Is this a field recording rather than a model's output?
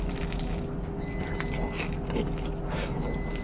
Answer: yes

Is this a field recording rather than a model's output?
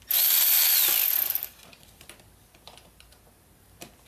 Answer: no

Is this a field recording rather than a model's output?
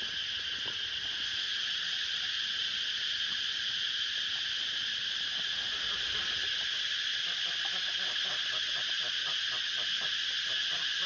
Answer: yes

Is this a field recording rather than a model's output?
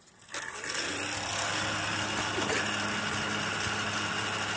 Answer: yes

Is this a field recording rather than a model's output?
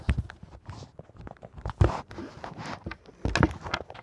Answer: yes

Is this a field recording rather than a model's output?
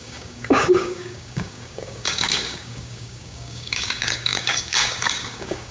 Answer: no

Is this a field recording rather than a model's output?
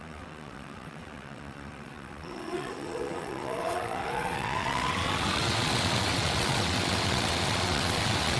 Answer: no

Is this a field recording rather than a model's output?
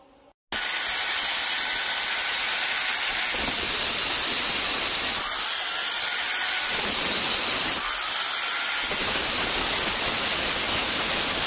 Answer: yes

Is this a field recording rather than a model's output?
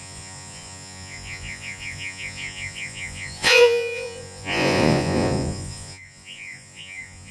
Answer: no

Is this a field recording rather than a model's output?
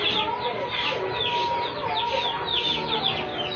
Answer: yes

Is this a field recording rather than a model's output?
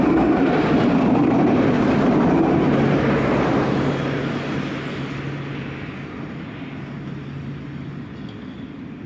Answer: yes